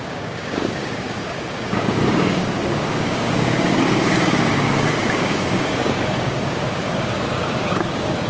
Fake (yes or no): yes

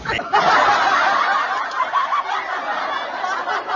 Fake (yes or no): no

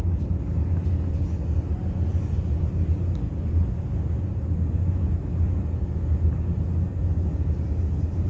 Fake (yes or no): no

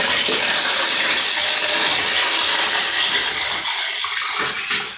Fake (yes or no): no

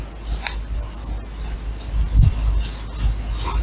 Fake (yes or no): no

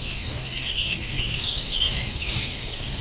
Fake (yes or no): yes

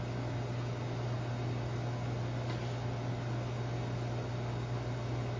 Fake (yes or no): no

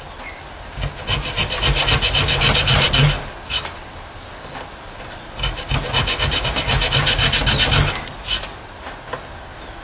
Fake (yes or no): no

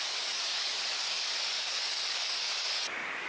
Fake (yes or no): yes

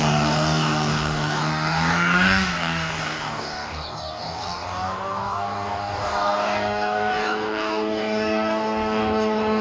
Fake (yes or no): yes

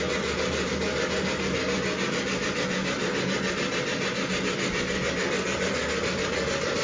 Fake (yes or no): no